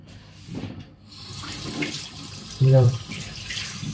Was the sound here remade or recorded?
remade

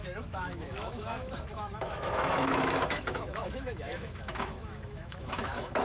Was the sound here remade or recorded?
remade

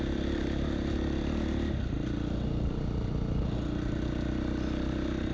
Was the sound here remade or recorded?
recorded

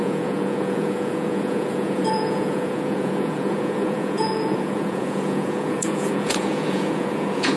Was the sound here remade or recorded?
remade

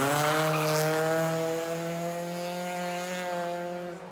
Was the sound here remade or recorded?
recorded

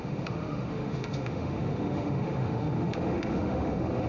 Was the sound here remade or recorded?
remade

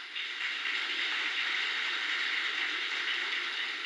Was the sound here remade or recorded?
recorded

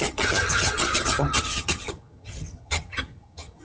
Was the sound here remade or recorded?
remade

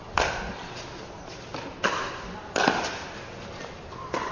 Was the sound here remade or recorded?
recorded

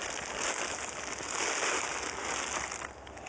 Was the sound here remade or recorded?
recorded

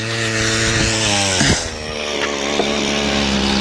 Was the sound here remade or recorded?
recorded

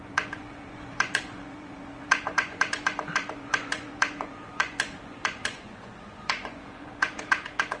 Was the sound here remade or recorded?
remade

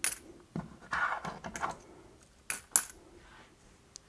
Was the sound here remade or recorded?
recorded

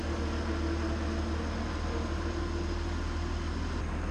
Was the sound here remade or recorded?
recorded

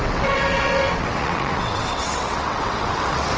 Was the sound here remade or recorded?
remade